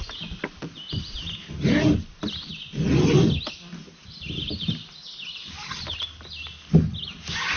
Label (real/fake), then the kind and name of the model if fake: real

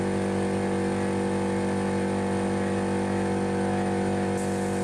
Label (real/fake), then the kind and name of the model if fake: real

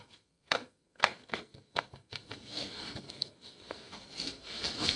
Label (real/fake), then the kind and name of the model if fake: fake, codec, SNAC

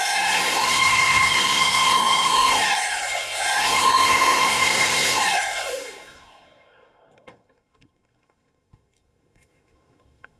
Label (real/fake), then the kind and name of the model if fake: fake, codec, SNAC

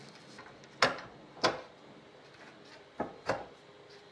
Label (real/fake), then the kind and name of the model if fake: real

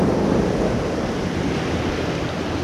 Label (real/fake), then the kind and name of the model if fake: real